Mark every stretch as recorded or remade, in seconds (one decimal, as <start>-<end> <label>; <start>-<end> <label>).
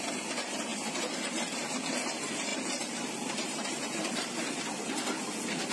0.0-0.7 recorded; 0.7-1.3 remade; 1.3-2.5 recorded; 2.5-4.6 remade; 4.6-5.7 recorded